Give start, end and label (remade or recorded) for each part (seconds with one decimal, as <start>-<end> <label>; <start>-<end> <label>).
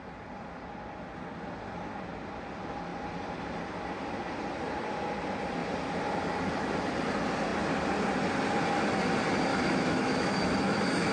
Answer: 0.0-9.5 recorded; 9.5-11.1 remade